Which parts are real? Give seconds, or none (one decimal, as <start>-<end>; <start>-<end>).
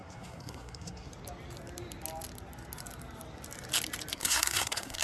1.1-4.1